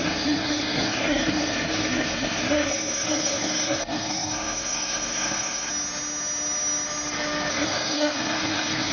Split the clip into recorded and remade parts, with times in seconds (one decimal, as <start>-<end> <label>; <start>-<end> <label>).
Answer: 0.0-5.7 remade; 5.7-7.5 recorded; 7.5-8.9 remade